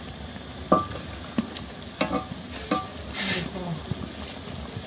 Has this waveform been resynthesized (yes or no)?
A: no